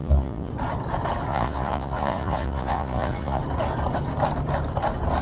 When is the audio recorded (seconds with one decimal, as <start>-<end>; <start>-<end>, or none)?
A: 0.5-1.3; 3.4-5.2